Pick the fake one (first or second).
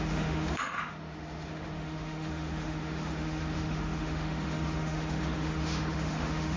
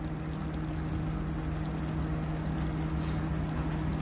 first